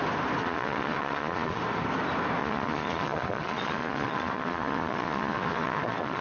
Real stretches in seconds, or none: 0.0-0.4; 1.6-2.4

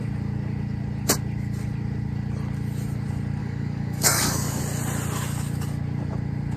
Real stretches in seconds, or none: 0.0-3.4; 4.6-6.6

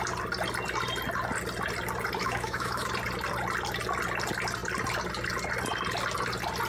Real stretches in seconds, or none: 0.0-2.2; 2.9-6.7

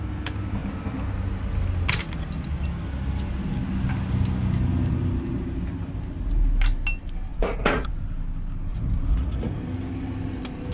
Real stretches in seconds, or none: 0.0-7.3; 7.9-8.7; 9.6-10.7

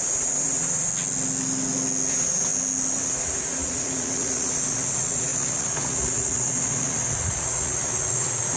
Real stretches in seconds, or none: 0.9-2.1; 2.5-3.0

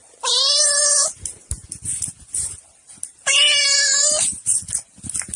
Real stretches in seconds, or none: 0.0-5.4

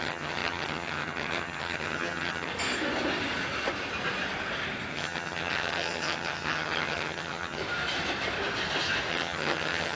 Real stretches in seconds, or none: 2.5-4.9; 7.6-9.1